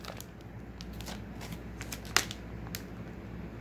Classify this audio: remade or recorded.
recorded